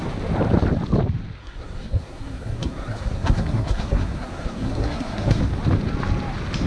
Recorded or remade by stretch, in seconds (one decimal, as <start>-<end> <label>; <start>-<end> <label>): 0.0-1.4 recorded; 1.4-5.4 remade; 5.4-6.7 recorded